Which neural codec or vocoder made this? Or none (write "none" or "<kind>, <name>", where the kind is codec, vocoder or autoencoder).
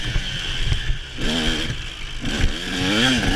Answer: none